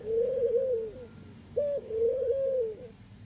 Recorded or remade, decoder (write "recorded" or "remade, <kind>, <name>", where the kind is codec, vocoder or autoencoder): recorded